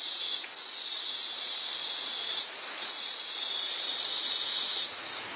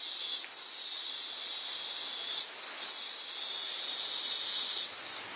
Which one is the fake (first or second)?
first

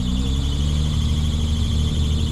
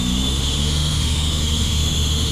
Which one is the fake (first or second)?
second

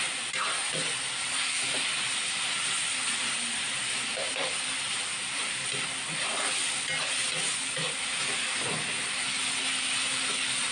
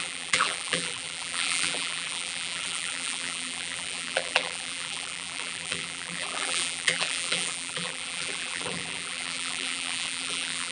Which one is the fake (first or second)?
second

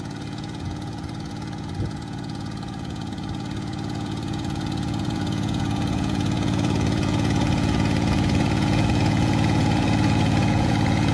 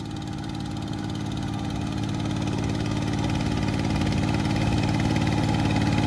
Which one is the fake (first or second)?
first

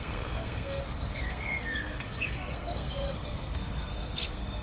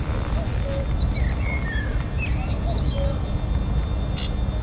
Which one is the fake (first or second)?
first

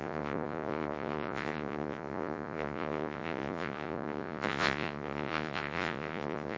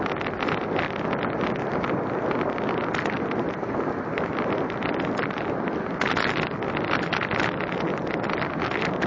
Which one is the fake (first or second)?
first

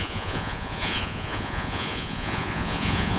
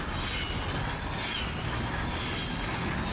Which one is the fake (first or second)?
first